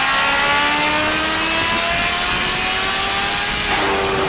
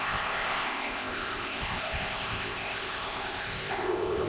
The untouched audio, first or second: first